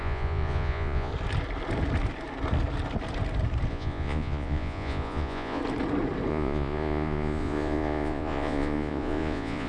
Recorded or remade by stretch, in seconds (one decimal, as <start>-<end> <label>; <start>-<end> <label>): 0.0-1.1 remade; 1.1-3.7 recorded; 3.7-5.6 remade; 5.6-6.3 recorded; 6.3-9.7 remade